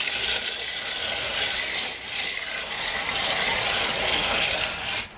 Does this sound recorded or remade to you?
recorded